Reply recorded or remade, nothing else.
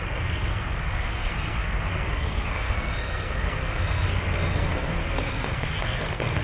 remade